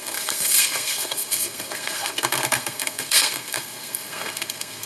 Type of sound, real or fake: fake